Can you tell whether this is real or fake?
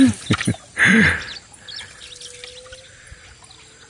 real